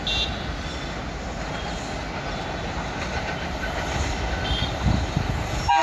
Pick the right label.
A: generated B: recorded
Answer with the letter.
B